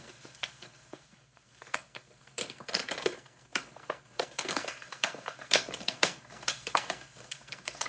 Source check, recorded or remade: remade